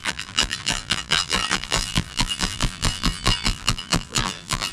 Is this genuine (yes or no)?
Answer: no